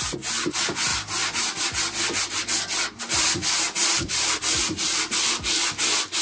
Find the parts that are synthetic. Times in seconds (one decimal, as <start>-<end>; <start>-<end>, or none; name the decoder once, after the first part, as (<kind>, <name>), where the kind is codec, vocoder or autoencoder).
none